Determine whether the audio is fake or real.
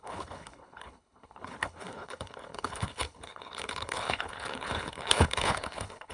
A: fake